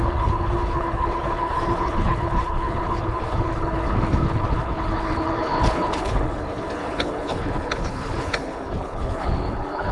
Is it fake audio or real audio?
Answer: fake